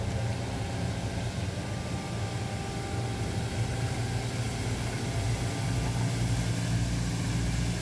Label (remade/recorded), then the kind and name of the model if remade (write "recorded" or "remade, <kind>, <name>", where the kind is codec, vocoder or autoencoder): recorded